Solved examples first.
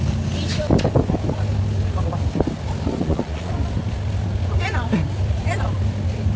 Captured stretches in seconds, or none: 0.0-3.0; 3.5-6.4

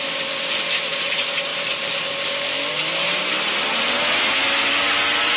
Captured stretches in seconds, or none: 0.0-5.4

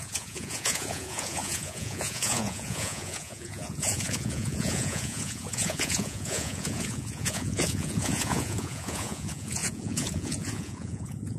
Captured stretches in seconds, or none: none

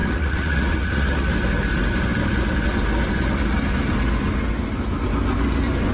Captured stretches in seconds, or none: 1.3-5.9

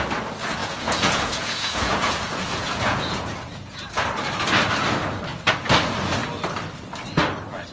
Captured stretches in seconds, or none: 0.0-0.6; 4.0-7.7

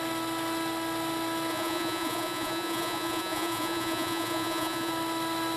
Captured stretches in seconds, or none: 0.0-1.5; 4.9-5.6

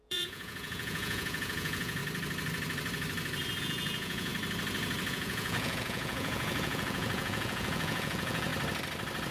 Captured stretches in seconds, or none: 2.0-3.6; 4.3-5.1; 8.5-9.3

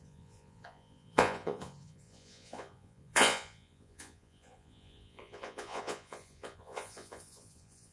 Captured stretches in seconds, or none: none